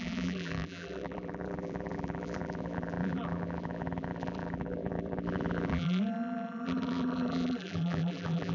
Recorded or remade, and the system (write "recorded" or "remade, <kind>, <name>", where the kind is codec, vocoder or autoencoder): remade, vocoder, BigVGAN v2